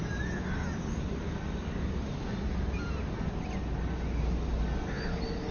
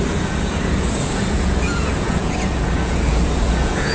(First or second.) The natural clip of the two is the first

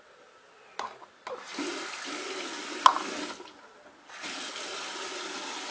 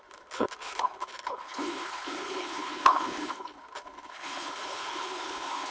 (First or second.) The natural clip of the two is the first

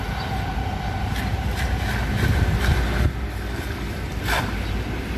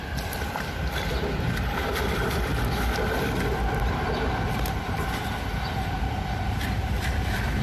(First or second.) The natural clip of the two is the first